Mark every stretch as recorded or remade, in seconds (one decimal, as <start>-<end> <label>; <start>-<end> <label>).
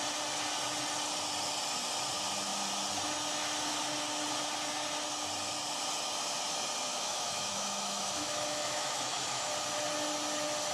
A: 0.0-6.9 recorded; 6.9-9.5 remade; 9.5-10.7 recorded